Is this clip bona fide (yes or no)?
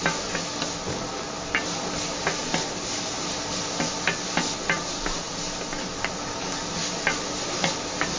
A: yes